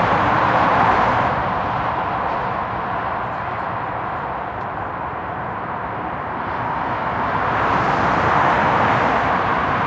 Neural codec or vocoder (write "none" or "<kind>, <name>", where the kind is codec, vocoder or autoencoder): vocoder, BigVGAN v2